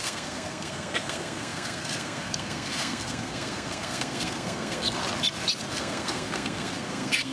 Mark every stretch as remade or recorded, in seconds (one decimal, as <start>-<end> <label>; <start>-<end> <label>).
0.0-5.0 remade; 5.0-5.7 recorded; 5.7-7.3 remade

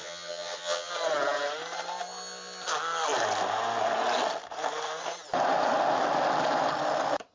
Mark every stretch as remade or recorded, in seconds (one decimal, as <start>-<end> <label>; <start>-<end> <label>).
0.0-0.9 remade; 0.9-7.3 recorded

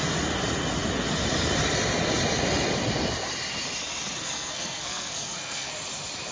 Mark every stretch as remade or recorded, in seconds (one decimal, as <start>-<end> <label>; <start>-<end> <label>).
0.0-4.2 recorded; 4.2-5.7 remade; 5.7-6.3 recorded